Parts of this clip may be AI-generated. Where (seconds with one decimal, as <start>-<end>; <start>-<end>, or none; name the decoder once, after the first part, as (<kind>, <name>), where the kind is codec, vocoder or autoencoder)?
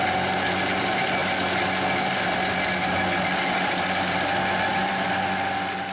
none